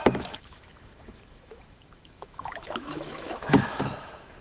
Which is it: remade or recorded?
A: remade